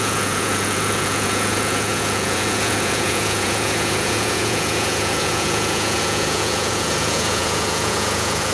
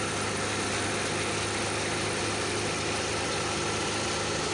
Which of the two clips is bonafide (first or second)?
second